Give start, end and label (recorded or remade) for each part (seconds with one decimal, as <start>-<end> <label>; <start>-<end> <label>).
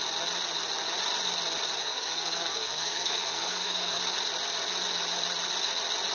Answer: 0.0-1.8 recorded; 1.8-4.0 remade; 4.0-6.1 recorded